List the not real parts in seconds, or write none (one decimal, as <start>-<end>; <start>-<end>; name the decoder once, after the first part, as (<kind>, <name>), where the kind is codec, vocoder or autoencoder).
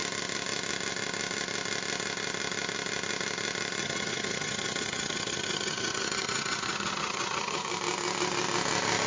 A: 3.8-7.7 (vocoder, HiFi-GAN)